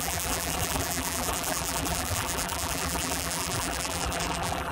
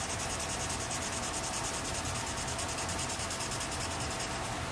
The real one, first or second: second